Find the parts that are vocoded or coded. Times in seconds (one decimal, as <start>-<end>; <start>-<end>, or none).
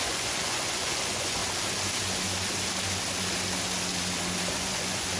0.0-1.4; 4.5-5.2